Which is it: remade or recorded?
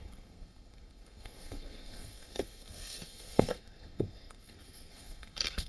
remade